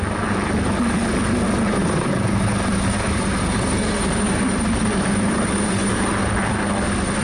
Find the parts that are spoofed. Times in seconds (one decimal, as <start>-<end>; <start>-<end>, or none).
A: 1.8-6.0